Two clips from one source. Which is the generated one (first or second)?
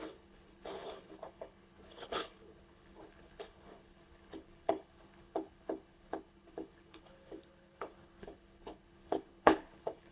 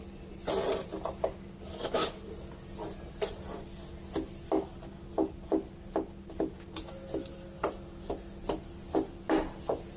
first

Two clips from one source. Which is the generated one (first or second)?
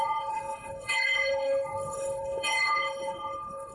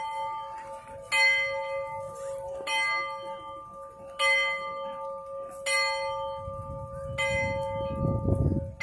first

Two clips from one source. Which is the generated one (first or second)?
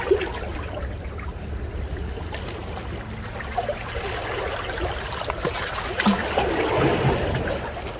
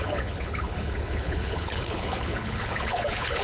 second